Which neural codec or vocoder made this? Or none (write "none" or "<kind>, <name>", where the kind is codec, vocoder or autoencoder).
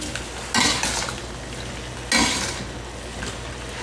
none